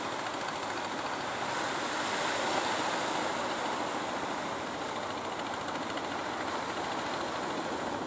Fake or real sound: real